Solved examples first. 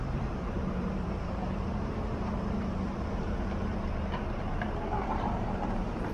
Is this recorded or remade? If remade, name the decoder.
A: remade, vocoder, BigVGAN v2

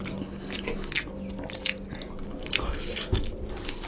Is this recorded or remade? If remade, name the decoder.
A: recorded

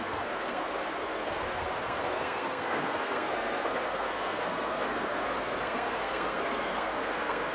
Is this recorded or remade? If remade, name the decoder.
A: remade, codec, SNAC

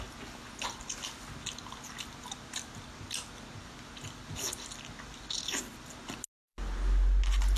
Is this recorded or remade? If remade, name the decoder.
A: recorded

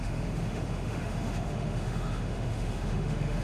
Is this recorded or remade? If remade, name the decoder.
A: remade, autoencoder, DAC-VAE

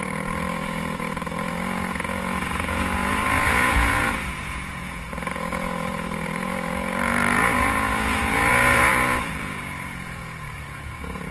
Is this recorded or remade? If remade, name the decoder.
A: remade, vocoder, Vocos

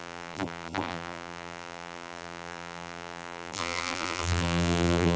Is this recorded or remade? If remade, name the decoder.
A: remade, vocoder, BigVGAN v2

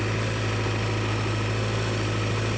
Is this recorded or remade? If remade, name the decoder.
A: recorded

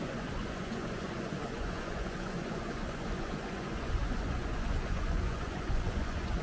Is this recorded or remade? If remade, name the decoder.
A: remade, vocoder, Vocos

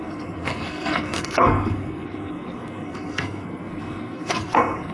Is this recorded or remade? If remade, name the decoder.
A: remade, codec, SNAC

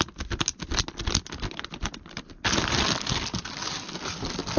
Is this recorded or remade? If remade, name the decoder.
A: recorded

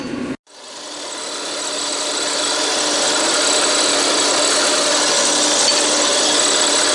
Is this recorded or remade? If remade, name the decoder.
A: recorded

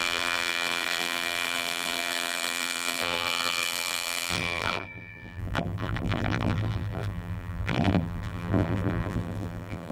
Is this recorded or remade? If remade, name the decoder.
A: remade, vocoder, BigVGAN v2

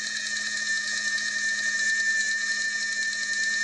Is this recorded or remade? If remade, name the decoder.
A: recorded